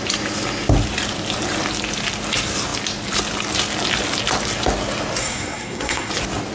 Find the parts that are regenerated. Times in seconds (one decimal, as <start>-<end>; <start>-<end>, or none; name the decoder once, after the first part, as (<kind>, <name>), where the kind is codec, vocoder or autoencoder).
5.2-6.1 (codec, SNAC)